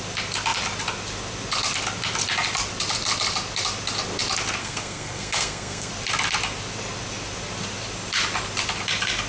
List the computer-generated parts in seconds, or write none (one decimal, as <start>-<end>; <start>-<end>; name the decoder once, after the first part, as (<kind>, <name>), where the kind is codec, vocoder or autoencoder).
4.6-5.9 (codec, SNAC)